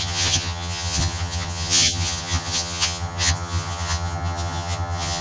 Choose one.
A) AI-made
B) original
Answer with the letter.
A